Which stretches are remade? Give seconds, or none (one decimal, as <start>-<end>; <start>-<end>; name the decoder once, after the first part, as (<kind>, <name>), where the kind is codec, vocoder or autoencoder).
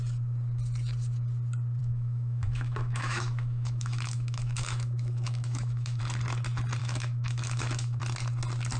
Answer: 1.8-6.0 (autoencoder, DAC-VAE); 6.8-8.0